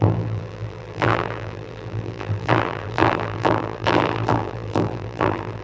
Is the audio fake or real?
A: fake